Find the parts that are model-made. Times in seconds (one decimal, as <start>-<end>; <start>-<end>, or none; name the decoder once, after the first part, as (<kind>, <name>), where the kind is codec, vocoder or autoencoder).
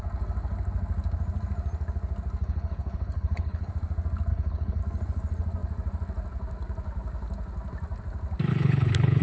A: 2.4-3.7 (codec, HILCodec); 4.3-4.8; 8.5-9.2